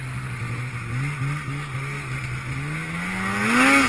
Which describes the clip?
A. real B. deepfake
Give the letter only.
A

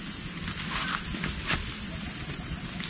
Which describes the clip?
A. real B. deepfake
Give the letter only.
A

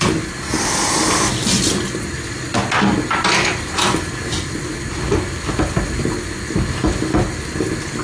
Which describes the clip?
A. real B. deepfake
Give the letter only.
A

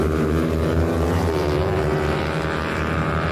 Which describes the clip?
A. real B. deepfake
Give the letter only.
B